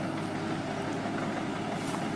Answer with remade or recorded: recorded